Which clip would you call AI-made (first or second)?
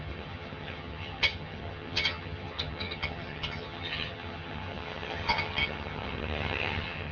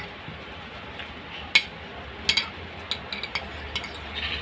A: first